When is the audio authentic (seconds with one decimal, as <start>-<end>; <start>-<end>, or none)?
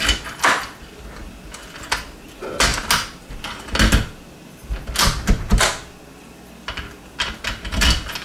0.0-8.2